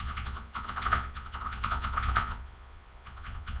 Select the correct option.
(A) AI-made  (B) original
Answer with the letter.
A